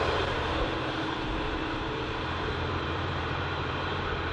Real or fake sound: fake